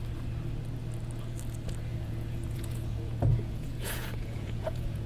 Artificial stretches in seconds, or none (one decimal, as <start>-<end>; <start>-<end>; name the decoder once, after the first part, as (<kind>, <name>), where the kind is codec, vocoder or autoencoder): 1.9-5.1 (vocoder, Vocos)